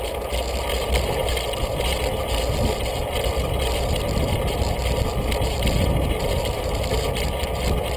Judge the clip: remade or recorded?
recorded